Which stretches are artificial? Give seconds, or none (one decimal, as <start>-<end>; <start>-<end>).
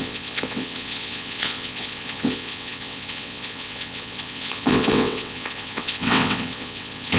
0.0-7.2